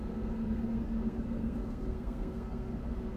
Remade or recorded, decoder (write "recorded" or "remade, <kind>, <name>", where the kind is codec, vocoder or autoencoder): remade, codec, SNAC